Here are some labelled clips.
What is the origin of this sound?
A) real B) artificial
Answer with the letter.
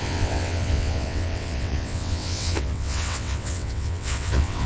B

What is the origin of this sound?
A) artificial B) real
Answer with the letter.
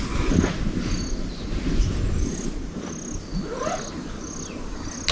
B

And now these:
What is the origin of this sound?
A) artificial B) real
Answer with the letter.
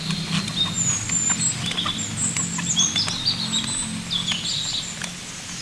B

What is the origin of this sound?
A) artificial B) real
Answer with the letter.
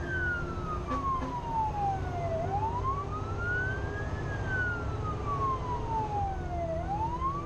B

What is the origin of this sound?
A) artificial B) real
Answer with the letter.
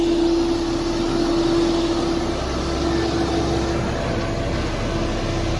B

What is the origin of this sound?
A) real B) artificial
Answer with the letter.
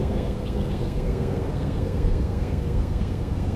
B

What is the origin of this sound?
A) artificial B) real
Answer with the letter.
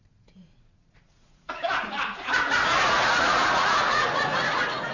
A